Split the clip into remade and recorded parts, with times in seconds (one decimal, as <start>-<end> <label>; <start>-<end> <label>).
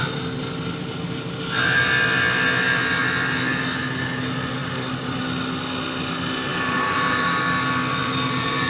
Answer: 0.0-4.6 recorded; 4.6-5.2 remade; 5.2-6.5 recorded; 6.5-7.3 remade; 7.3-8.0 recorded; 8.0-8.7 remade